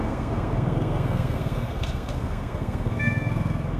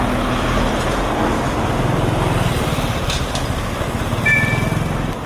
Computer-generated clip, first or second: first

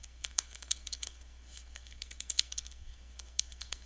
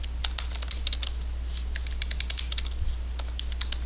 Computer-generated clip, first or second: first